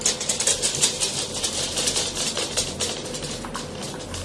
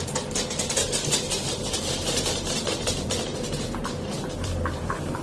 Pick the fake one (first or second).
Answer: second